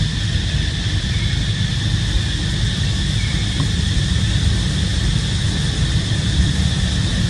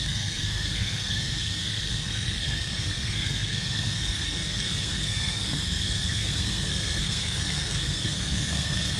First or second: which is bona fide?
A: first